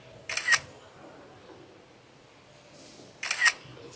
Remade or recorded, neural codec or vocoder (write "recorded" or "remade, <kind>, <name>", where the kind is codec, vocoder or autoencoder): recorded